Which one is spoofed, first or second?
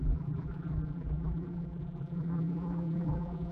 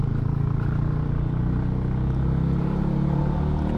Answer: first